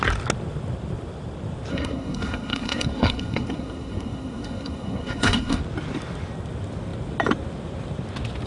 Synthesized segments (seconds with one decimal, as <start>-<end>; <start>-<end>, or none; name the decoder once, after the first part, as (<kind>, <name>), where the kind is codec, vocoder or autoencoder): 1.7-5.6 (codec, SNAC)